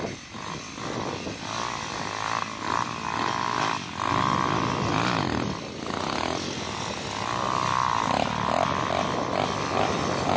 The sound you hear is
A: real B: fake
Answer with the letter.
A